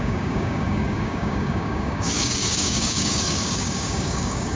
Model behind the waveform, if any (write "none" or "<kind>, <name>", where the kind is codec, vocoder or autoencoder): codec, DAC